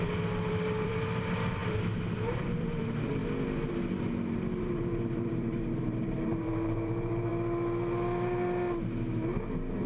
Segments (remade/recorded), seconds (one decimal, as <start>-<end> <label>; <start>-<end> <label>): 0.0-3.2 remade; 3.2-4.6 recorded; 4.6-7.3 remade; 7.3-9.9 recorded